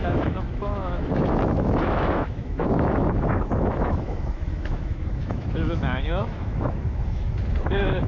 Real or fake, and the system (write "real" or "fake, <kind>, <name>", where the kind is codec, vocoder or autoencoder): fake, autoencoder, DAC-VAE